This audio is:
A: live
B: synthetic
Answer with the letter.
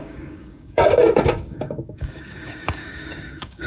B